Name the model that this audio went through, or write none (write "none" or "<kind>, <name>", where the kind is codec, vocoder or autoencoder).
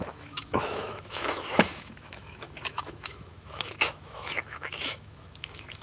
autoencoder, DAC-VAE